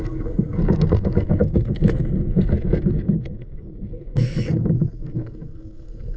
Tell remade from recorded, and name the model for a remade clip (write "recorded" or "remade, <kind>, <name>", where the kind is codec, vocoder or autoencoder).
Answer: remade, codec, SNAC